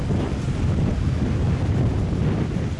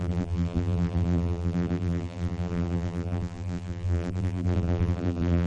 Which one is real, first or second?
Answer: first